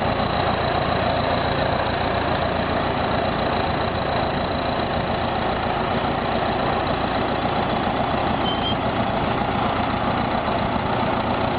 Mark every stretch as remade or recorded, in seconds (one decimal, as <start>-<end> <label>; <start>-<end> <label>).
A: 0.0-11.6 recorded